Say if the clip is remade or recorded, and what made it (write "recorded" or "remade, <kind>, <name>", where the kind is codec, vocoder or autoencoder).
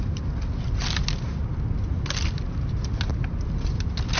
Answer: recorded